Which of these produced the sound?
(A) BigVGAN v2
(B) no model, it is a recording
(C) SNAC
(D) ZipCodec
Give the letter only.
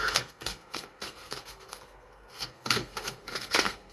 C